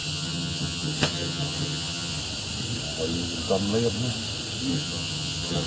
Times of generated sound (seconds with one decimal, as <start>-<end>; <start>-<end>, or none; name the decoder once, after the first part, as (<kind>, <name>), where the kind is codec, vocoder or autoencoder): 0.0-2.2 (vocoder, HiFi-GAN); 4.7-5.7